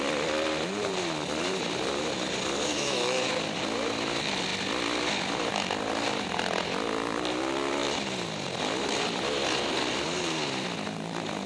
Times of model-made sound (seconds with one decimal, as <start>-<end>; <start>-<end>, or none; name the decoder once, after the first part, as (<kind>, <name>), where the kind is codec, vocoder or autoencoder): 2.7-3.3 (autoencoder, DAC-VAE)